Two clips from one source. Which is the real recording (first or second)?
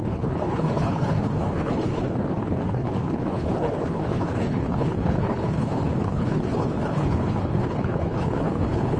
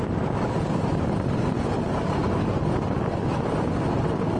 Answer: second